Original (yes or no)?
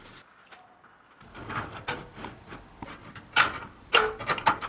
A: yes